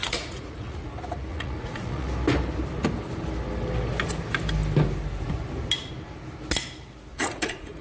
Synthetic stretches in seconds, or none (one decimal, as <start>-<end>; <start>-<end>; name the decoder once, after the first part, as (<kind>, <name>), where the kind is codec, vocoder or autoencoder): 0.0-0.9 (vocoder, Vocos); 1.3-2.1; 7.1-7.8